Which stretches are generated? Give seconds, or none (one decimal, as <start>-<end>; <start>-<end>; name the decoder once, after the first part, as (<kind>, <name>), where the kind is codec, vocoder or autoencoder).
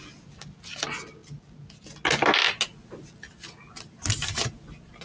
none